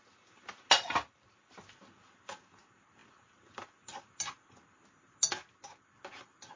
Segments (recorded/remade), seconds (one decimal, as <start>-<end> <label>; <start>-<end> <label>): 0.0-6.6 recorded